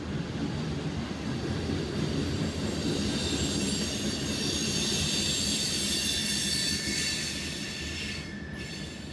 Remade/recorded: recorded